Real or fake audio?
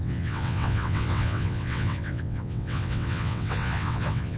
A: fake